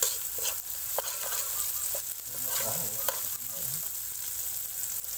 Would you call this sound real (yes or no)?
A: yes